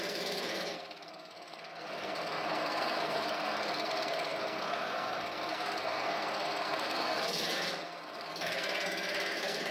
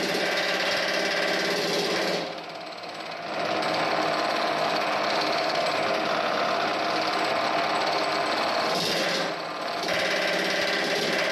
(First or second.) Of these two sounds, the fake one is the first